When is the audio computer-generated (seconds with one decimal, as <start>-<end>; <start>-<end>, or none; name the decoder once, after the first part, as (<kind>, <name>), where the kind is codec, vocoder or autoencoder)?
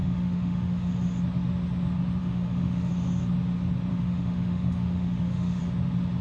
0.0-0.9 (autoencoder, DAC-VAE); 2.2-2.9; 3.9-5.6